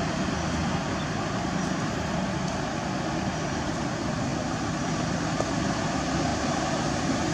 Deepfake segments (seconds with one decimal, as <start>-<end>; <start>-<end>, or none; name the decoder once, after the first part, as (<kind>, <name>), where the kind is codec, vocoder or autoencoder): 0.6-2.1 (vocoder, BigVGAN v2); 6.3-7.3